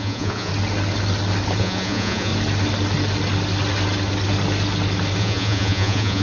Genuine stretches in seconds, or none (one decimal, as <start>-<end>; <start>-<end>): 0.5-1.6; 2.3-5.2